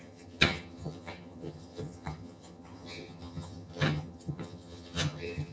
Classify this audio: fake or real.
fake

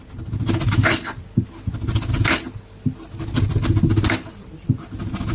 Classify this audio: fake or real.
real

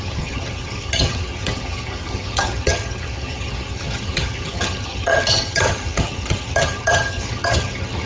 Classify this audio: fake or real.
fake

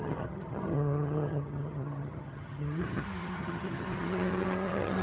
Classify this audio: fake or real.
fake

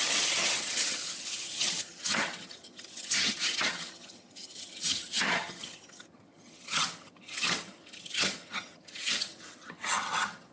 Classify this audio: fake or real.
fake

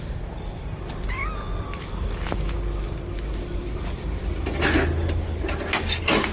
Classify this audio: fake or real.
real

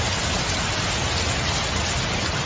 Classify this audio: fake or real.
real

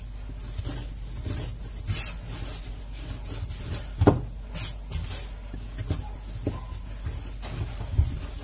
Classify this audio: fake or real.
real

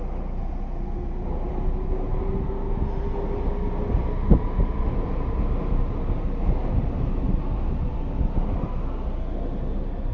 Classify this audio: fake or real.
real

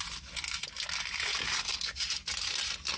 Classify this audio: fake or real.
real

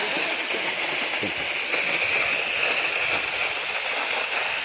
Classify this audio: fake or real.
real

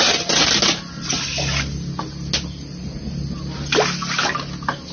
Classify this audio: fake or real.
real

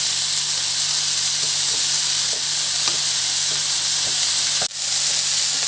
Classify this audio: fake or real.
real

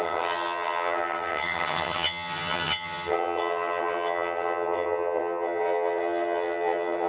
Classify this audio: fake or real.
fake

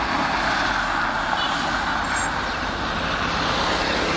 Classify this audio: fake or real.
real